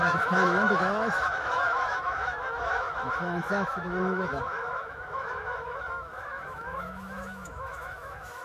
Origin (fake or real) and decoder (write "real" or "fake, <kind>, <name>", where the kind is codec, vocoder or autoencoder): fake, autoencoder, DAC-VAE